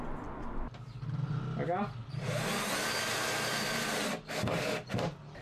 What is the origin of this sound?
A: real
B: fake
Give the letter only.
A